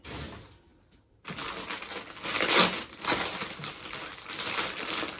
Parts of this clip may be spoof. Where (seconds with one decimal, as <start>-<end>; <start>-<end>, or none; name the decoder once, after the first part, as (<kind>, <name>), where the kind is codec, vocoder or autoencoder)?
none

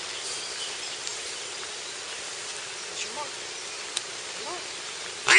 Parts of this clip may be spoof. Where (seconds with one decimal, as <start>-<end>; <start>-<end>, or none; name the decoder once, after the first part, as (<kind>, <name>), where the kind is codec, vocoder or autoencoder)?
none

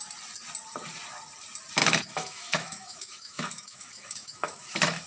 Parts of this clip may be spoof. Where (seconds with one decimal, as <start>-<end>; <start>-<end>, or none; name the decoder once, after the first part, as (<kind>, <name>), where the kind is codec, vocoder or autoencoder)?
1.8-5.1 (autoencoder, DAC-VAE)

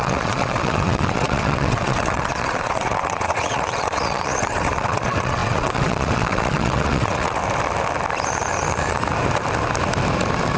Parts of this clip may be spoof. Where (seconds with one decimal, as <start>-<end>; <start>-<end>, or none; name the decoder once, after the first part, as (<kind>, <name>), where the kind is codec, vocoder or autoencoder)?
0.0-7.4 (vocoder, WaveNeXt)

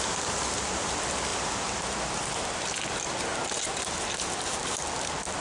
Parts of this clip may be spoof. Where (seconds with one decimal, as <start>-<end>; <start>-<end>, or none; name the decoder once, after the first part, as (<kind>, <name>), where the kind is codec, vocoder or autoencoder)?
none